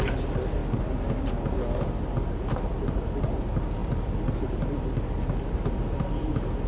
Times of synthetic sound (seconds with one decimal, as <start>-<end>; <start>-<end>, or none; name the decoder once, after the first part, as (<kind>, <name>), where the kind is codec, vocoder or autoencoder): none